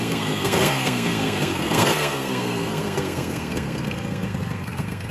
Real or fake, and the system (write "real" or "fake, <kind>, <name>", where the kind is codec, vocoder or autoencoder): fake, codec, SNAC